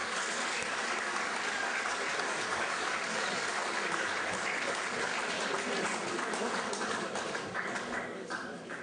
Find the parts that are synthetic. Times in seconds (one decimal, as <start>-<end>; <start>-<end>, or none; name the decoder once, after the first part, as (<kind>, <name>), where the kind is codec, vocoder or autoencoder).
0.0-5.1 (codec, DAC); 5.8-8.8

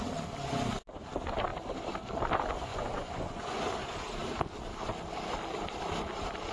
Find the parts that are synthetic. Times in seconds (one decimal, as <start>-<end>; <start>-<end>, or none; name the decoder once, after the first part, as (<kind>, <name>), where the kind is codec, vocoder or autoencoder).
2.7-3.6 (vocoder, Vocos)

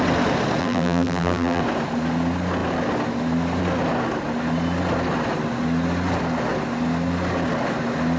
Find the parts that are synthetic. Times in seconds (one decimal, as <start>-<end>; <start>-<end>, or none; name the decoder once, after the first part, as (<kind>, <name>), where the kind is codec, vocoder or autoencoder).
0.6-1.6 (vocoder, BigVGAN v2)

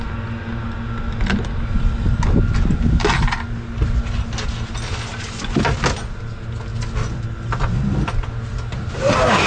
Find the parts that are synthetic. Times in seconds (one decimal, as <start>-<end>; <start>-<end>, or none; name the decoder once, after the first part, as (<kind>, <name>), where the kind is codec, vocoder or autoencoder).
none

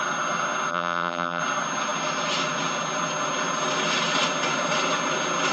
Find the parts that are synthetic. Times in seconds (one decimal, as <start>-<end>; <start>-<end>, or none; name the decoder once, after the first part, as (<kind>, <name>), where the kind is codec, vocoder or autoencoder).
0.7-1.4 (vocoder, BigVGAN v2)

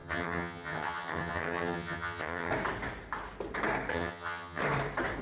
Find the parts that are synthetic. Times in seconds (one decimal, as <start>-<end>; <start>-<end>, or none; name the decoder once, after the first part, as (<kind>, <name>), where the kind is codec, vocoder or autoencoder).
0.0-2.5 (vocoder, HiFi-GAN); 3.9-4.6

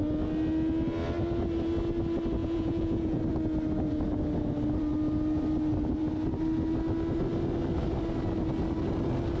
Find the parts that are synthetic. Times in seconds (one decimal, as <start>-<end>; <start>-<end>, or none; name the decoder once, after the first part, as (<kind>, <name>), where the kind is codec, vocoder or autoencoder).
2.4-3.2 (vocoder, Vocos)